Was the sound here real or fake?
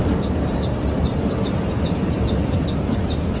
real